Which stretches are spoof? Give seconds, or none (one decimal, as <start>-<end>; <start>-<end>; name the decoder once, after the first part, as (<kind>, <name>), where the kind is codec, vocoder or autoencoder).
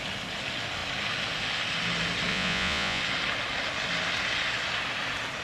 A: 2.3-3.0 (vocoder, Vocos)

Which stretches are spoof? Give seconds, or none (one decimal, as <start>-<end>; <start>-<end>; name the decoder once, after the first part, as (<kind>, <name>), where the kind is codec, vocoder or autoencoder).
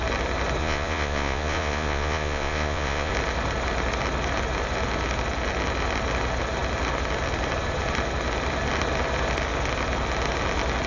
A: 0.6-3.1 (vocoder, Vocos)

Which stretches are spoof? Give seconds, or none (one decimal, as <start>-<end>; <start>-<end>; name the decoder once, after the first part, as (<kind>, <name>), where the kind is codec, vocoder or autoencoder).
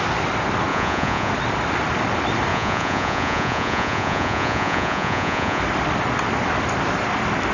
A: 0.7-1.3 (vocoder, Vocos); 2.5-5.6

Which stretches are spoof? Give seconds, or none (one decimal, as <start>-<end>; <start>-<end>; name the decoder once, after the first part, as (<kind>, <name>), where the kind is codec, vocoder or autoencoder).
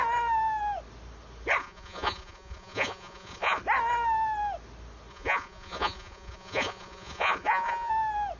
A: 1.6-3.6 (vocoder, Vocos); 5.1-7.9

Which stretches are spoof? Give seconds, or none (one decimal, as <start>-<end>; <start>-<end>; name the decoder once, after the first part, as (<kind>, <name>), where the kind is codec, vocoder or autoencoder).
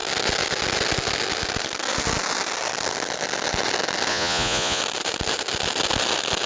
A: 4.1-4.8 (vocoder, Vocos)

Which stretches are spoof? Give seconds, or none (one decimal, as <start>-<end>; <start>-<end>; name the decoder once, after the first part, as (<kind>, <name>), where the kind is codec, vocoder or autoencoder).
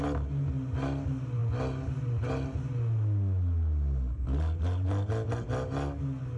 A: none